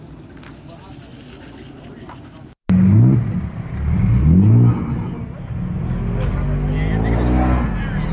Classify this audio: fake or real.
real